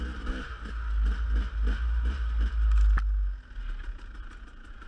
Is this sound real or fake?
real